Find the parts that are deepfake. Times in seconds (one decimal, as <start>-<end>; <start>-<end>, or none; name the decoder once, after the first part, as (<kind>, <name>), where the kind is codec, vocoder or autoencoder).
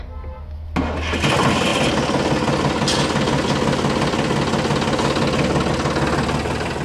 none